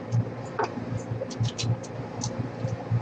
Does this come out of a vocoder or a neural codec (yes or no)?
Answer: no